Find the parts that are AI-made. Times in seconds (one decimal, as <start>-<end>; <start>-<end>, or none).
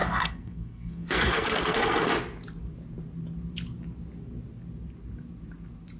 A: 0.0-2.1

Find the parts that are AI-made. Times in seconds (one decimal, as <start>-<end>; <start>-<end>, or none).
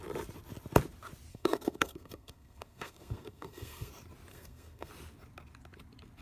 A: 1.3-3.9; 4.3-4.9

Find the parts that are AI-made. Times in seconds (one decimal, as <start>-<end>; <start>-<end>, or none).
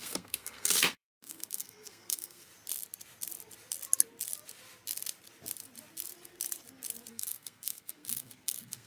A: 0.0-2.5; 7.1-8.9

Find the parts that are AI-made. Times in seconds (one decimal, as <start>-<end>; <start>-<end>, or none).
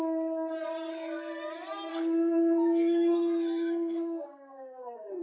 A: 0.9-1.4; 1.9-5.2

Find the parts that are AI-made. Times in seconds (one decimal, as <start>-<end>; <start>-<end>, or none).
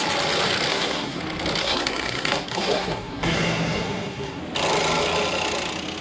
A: 0.7-1.2; 1.6-4.4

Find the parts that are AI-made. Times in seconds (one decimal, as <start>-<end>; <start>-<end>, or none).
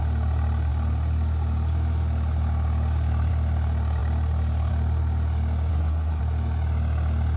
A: 5.7-6.2